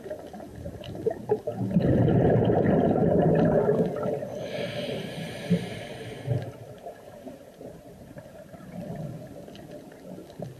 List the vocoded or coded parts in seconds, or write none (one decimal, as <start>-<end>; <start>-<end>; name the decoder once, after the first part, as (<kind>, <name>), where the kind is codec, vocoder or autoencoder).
0.5-1.8 (vocoder, BigVGAN v2); 4.3-8.7